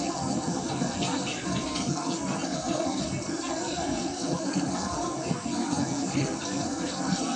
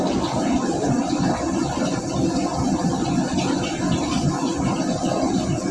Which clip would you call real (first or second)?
second